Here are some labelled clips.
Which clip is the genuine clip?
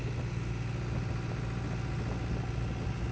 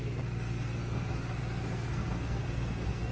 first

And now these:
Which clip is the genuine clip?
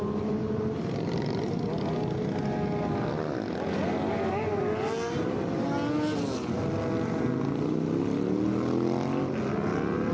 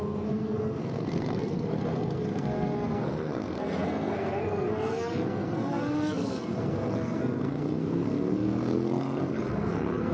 first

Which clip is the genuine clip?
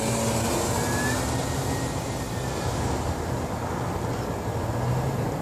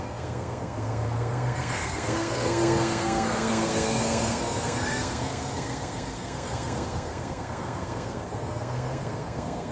first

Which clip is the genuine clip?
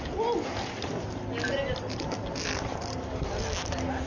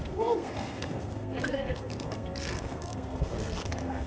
first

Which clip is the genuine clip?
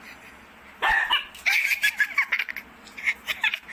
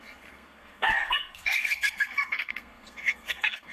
first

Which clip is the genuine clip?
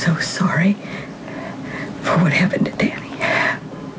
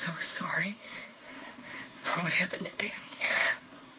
first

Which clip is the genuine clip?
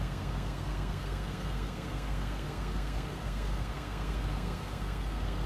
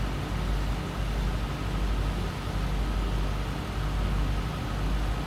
second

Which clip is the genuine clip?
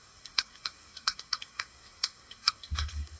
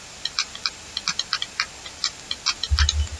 second